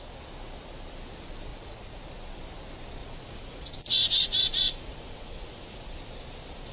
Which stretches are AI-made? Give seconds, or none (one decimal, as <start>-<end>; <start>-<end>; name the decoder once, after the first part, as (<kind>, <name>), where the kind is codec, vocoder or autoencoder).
1.5-2.0 (vocoder, Vocos); 3.0-5.9